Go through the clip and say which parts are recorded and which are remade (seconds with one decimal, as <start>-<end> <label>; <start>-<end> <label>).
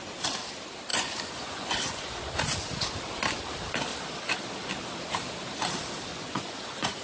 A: 0.0-0.9 recorded; 0.9-2.3 remade; 2.3-6.1 recorded; 6.1-7.0 remade